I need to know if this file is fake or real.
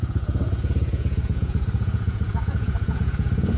fake